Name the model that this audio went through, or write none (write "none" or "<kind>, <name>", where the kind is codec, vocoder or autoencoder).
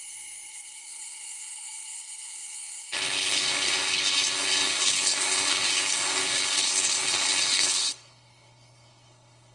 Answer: codec, HILCodec